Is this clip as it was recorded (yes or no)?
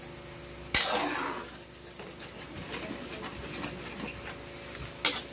yes